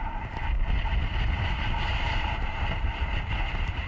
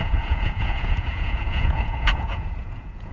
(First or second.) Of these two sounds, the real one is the first